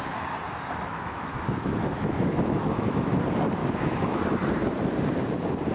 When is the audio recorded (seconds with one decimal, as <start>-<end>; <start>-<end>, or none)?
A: 0.0-0.9; 3.2-3.6; 4.2-5.7

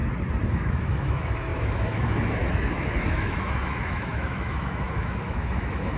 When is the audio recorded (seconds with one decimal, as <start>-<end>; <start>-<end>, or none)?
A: 0.0-0.5

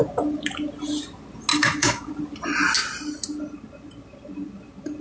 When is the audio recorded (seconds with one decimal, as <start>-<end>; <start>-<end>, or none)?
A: 0.0-1.5; 2.1-5.0